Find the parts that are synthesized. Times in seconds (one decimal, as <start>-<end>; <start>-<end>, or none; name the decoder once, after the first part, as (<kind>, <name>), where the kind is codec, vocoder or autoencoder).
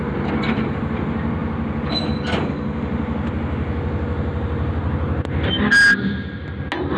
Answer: none